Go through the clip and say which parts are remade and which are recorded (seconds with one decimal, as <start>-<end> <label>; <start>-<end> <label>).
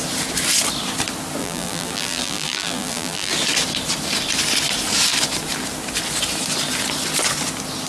0.0-1.4 recorded; 1.4-3.3 remade; 3.3-7.9 recorded